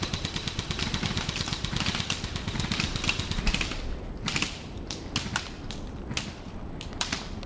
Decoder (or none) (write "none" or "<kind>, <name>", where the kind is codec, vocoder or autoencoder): none